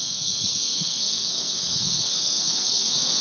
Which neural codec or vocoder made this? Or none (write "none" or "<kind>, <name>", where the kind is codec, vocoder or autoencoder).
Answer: codec, SNAC